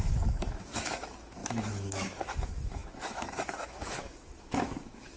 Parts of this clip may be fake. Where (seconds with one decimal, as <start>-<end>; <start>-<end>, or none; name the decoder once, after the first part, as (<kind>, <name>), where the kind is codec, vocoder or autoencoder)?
0.0-5.2 (autoencoder, DAC-VAE)